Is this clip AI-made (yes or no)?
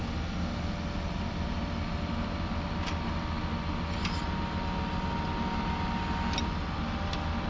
no